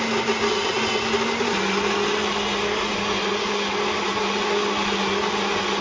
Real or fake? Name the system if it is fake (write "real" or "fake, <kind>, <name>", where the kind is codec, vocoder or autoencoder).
real